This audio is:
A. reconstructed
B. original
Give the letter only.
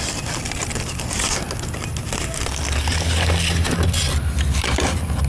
B